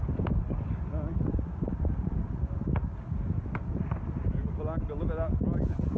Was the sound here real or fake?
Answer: real